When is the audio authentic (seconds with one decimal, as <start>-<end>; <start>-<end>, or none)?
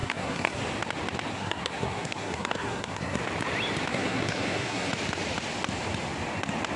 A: 0.6-1.3; 3.2-3.9; 4.9-6.8